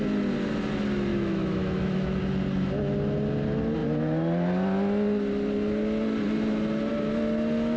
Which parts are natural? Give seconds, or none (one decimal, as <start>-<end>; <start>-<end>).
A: 0.0-1.1; 2.2-7.8